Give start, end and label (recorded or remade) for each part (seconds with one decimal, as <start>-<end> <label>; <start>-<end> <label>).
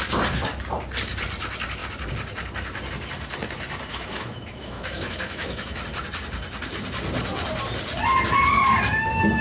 0.0-3.9 recorded; 3.9-5.8 remade; 5.8-9.4 recorded